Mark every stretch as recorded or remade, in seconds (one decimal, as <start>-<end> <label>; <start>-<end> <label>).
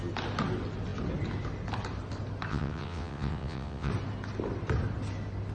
0.0-2.5 recorded; 2.5-3.9 remade; 3.9-5.5 recorded